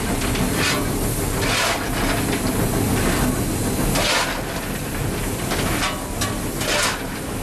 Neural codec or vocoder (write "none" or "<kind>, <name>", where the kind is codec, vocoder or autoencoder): none